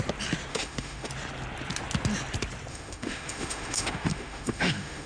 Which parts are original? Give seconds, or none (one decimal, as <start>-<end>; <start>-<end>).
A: 0.0-0.5; 1.1-2.7